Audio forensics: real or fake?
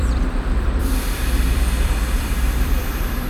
fake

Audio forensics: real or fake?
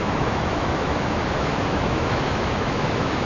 fake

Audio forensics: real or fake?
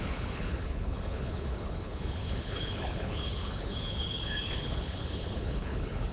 fake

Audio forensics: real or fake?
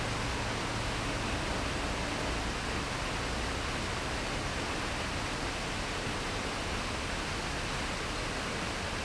real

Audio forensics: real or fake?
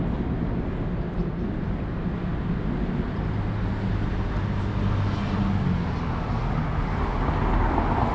real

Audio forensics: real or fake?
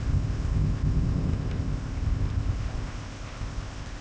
fake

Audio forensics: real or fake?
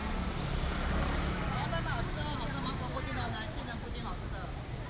real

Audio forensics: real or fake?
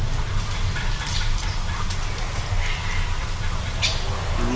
real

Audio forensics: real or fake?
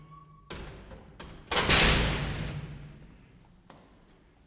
real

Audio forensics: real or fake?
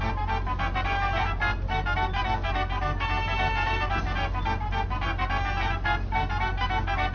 real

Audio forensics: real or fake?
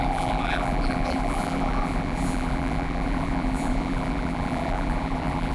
fake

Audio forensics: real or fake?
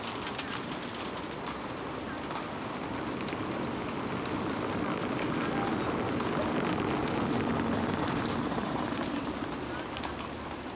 real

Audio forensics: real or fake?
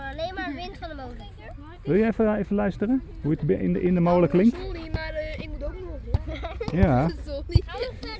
real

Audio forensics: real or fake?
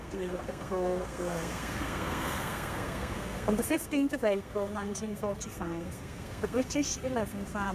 fake